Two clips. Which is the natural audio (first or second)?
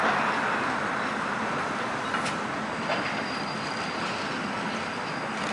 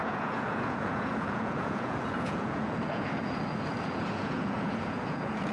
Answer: first